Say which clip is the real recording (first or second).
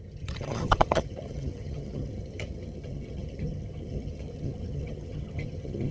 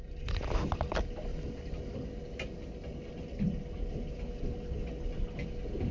second